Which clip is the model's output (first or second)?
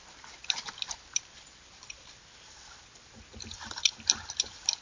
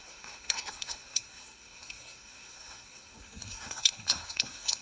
second